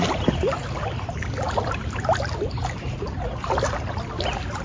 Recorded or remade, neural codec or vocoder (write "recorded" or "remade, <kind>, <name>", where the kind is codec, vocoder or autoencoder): recorded